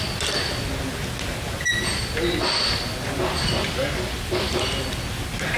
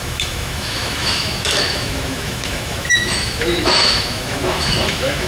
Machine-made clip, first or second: second